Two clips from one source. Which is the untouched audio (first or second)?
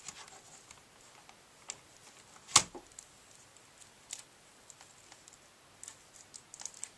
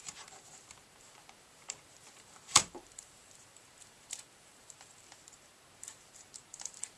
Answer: first